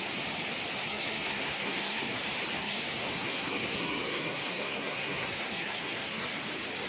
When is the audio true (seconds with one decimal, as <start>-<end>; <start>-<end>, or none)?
0.0-0.8; 2.2-2.6; 6.4-6.9